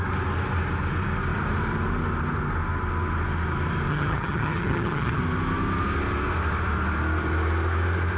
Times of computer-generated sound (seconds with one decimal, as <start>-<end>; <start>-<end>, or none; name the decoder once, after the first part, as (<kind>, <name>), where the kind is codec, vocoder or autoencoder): 3.9-5.2 (vocoder, HiFi-GAN)